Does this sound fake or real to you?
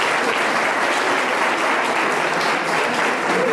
real